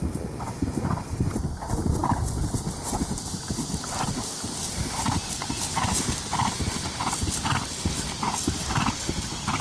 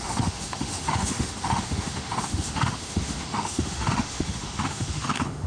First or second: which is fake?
second